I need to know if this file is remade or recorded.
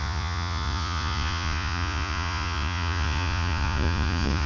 remade